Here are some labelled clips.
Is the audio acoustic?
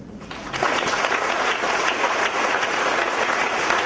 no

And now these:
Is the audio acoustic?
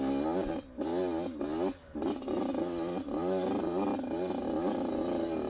yes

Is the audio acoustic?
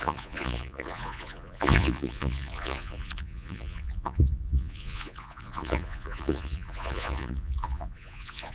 no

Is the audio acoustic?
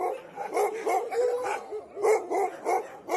yes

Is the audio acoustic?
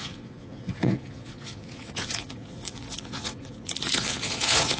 no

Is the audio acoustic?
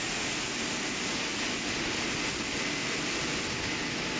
yes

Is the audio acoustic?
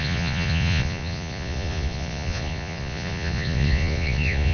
no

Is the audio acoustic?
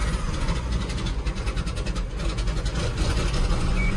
no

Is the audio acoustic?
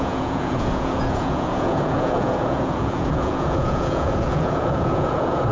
no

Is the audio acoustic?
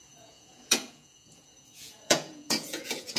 no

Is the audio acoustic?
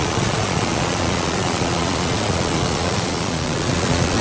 no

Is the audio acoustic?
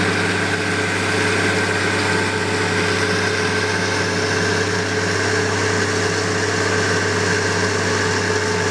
yes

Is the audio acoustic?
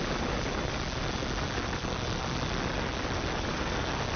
yes